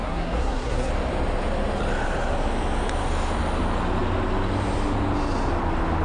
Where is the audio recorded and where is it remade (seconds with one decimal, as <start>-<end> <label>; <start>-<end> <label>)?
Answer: 0.0-0.9 remade; 0.9-6.0 recorded